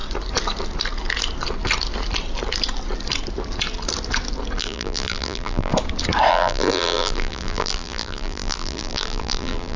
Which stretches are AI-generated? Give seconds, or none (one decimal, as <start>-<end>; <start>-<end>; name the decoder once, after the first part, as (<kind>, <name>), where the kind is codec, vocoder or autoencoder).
4.6-5.7 (vocoder, BigVGAN v2); 6.3-9.8